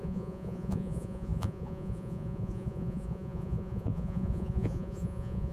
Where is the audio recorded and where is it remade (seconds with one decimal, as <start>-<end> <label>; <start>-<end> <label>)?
0.0-5.5 remade